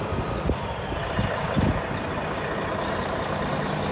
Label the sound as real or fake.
real